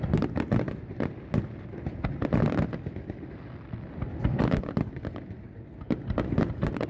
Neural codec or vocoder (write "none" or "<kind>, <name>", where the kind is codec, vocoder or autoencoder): none